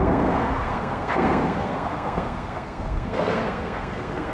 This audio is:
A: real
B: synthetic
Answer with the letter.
B